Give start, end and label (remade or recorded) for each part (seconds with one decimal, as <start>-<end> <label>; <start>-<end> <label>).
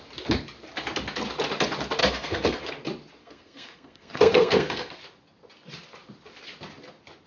0.0-2.0 recorded; 2.0-2.7 remade; 2.7-3.2 recorded; 3.2-5.0 remade; 5.0-7.3 recorded